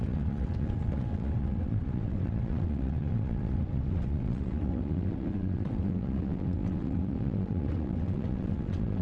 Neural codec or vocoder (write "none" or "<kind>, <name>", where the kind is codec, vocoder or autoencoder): vocoder, WaveNeXt